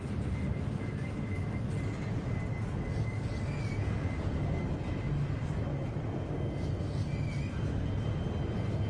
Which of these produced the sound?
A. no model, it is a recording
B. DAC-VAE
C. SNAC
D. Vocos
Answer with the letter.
A